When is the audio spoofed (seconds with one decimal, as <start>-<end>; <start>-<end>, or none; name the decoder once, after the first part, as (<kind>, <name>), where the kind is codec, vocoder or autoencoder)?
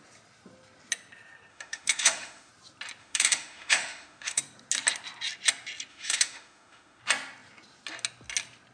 1.5-2.5 (autoencoder, DAC-VAE); 3.0-4.4; 5.9-7.0